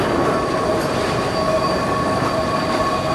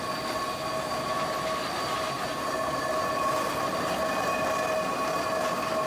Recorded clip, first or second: second